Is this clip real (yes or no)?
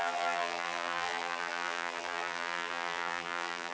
no